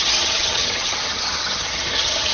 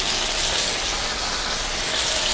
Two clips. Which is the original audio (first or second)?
second